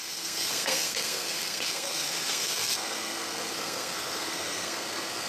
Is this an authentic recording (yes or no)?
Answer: no